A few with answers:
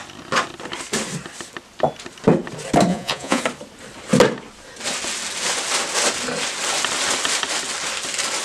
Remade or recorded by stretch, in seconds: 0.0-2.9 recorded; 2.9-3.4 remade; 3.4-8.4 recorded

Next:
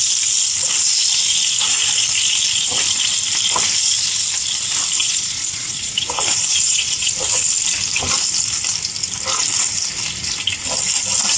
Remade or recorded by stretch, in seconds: 0.0-5.0 recorded; 5.0-7.1 remade; 7.1-11.4 recorded

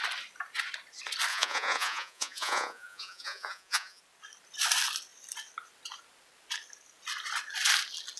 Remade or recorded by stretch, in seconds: 0.0-1.3 recorded; 1.3-4.0 remade; 4.0-8.2 recorded

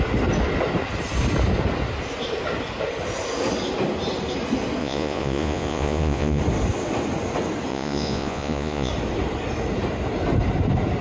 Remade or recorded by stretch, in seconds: 0.0-4.8 recorded; 4.8-6.4 remade; 6.4-7.7 recorded; 7.7-8.9 remade; 8.9-11.0 recorded

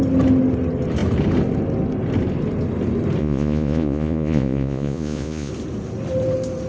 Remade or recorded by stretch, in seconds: 0.0-3.2 recorded; 3.2-5.5 remade; 5.5-6.7 recorded

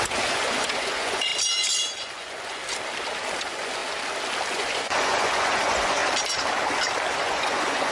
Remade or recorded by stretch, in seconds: 0.0-1.3 remade; 1.3-2.0 recorded; 2.0-2.6 remade; 2.6-3.4 recorded; 3.4-3.8 remade; 3.8-4.5 recorded; 4.5-6.0 remade; 6.0-7.2 recorded; 7.2-7.9 remade

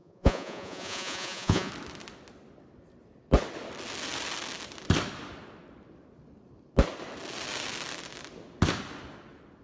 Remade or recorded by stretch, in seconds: 0.0-1.7 remade; 1.7-9.6 recorded

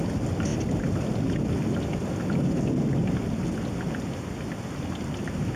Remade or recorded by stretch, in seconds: 0.0-5.6 recorded